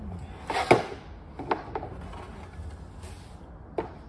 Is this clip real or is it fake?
real